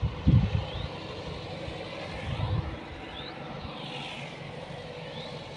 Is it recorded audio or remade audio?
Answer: recorded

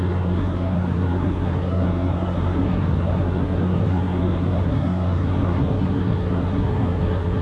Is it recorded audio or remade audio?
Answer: remade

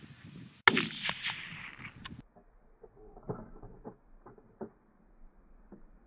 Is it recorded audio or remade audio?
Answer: recorded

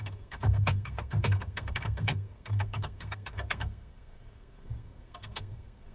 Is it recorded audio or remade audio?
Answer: remade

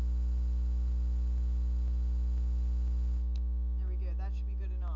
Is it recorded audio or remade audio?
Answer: recorded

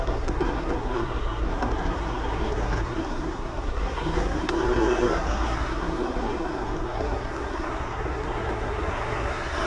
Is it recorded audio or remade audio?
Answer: remade